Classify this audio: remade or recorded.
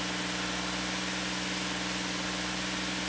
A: recorded